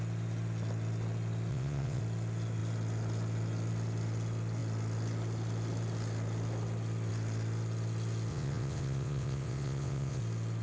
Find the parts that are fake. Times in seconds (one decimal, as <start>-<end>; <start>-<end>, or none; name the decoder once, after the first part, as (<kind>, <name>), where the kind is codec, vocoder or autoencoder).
1.5-2.0 (vocoder, WaveNeXt); 8.3-10.2